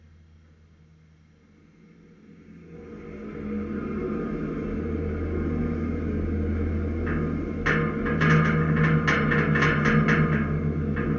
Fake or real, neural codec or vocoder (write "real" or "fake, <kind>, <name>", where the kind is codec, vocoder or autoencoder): real